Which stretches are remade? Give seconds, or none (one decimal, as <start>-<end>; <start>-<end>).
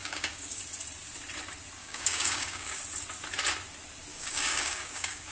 0.0-0.6; 1.8-2.8; 4.1-5.3